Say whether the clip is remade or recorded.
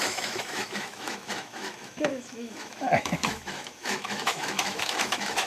remade